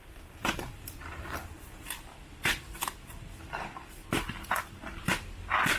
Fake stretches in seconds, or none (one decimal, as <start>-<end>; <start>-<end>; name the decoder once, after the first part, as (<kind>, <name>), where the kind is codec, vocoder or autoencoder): 0.7-4.0 (vocoder, BigVGAN v2)